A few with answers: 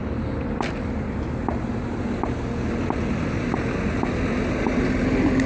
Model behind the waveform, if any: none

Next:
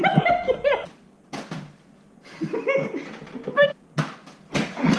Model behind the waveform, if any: none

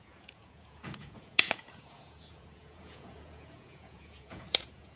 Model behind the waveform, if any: vocoder, Vocos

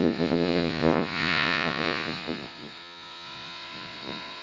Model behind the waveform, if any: vocoder, Vocos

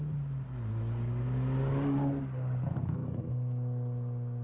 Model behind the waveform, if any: none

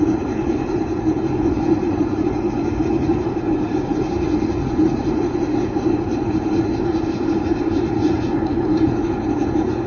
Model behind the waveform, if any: vocoder, Vocos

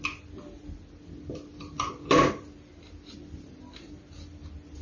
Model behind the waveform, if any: none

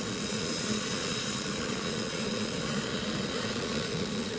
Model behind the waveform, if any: vocoder, Vocos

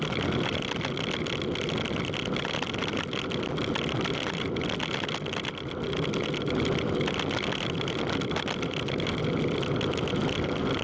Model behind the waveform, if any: none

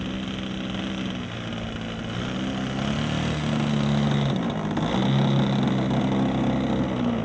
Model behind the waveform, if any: none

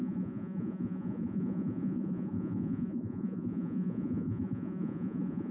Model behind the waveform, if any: vocoder, Vocos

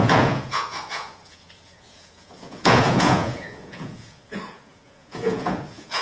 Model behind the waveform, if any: vocoder, Vocos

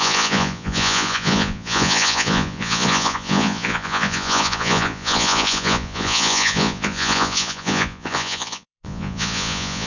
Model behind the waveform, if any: vocoder, Vocos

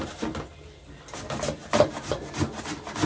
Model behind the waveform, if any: none